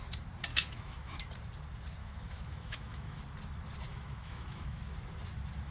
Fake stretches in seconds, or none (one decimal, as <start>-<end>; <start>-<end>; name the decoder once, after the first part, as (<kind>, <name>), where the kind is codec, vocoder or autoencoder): 0.5-1.3 (autoencoder, DAC-VAE); 2.0-3.2; 3.9-4.8